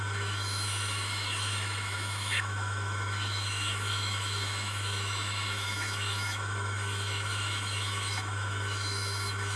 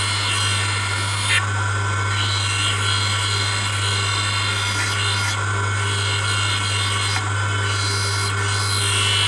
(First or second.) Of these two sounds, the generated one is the first